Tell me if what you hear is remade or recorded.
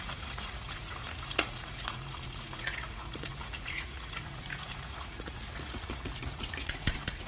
remade